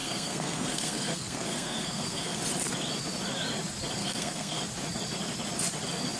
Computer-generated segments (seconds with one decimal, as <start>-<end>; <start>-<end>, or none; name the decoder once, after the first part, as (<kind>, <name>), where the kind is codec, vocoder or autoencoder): 0.0-2.4 (codec, SNAC); 4.0-4.6